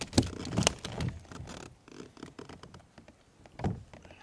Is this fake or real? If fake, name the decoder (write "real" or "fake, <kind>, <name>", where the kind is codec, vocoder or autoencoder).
real